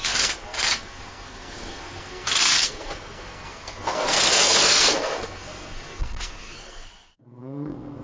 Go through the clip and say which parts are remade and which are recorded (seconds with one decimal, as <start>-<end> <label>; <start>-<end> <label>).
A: 0.0-8.0 remade